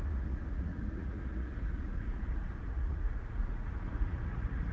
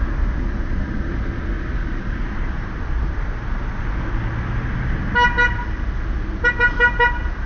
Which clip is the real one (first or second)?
second